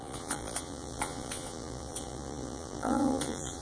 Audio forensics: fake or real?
fake